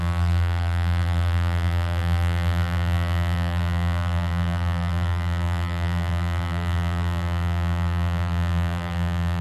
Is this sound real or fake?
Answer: fake